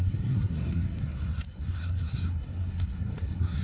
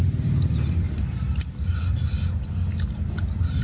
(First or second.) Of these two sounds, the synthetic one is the first